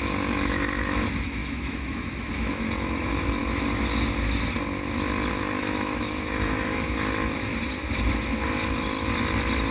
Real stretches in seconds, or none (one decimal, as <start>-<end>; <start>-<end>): 3.4-5.3; 7.5-9.7